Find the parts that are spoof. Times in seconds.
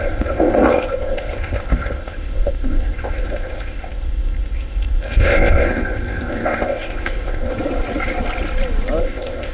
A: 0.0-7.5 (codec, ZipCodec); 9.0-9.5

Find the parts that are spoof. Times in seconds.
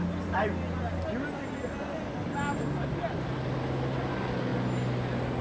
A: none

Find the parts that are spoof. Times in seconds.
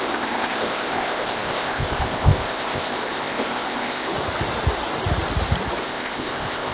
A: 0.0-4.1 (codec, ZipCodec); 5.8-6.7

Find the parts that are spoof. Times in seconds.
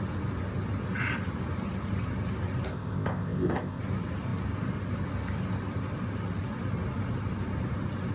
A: 2.7-3.8 (codec, ZipCodec)